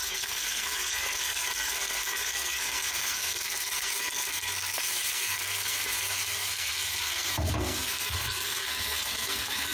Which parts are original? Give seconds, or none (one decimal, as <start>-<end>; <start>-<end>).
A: none